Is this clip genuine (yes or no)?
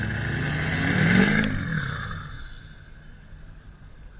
yes